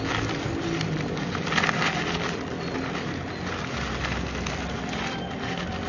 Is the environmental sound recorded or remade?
recorded